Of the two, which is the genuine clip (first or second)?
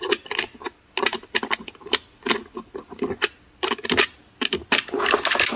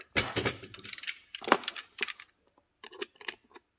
first